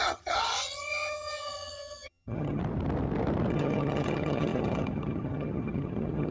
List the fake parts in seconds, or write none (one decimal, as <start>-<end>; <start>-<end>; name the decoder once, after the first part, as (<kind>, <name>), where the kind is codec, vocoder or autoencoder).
0.0-2.6 (vocoder, HiFi-GAN); 3.5-6.3